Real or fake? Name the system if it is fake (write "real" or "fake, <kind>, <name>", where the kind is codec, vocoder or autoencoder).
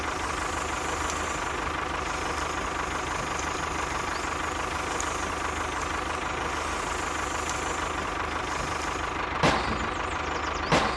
real